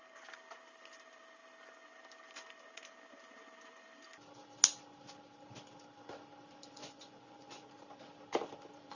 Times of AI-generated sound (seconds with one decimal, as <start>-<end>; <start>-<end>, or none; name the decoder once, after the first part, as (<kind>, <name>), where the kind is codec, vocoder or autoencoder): 6.8-7.7 (vocoder, Vocos)